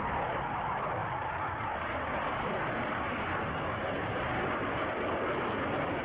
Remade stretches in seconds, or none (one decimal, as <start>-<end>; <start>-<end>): none